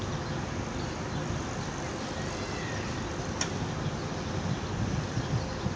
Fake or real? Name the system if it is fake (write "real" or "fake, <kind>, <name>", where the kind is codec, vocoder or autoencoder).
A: real